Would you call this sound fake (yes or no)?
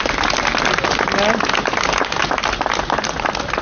no